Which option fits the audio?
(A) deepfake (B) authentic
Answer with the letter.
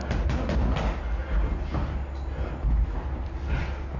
B